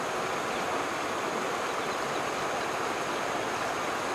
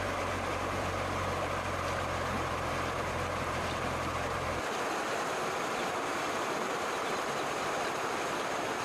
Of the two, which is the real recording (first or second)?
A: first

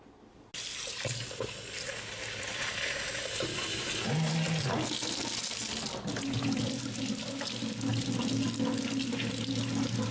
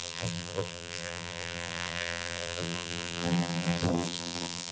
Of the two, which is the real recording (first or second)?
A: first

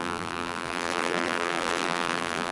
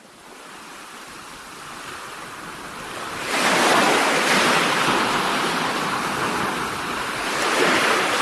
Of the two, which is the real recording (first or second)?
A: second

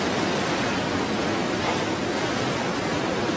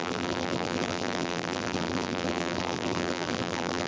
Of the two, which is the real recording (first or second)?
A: first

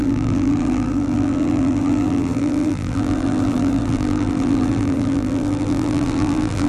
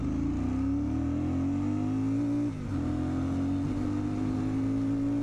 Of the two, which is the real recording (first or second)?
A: second